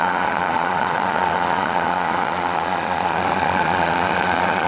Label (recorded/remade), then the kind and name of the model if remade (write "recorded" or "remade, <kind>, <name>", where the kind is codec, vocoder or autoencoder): remade, vocoder, Vocos